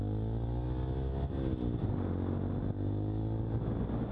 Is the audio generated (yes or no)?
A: no